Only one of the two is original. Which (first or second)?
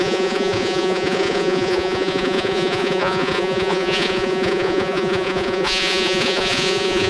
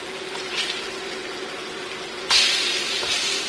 second